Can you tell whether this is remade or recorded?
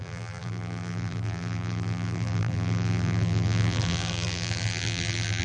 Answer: remade